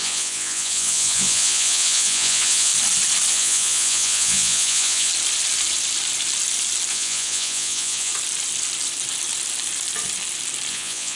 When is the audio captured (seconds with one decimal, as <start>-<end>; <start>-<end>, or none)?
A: 2.7-3.3; 5.1-6.9; 8.1-10.7